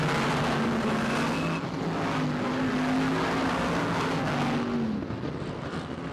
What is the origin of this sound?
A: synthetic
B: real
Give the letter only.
B